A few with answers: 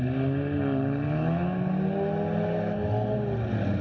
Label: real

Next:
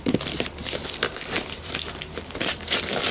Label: fake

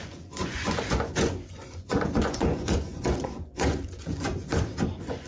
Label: fake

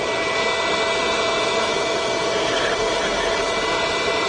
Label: real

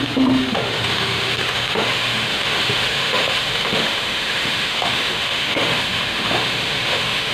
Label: fake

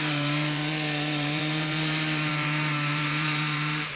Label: fake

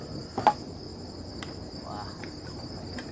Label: real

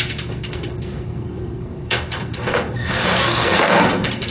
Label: fake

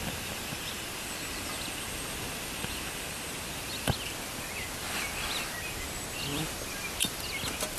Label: real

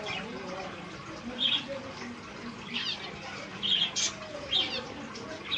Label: real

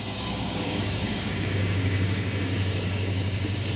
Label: fake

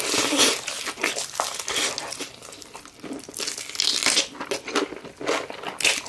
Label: real